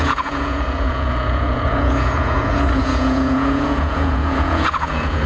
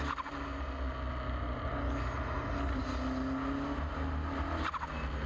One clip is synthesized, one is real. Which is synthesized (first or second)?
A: first